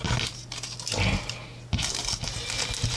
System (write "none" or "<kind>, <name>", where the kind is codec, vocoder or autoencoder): none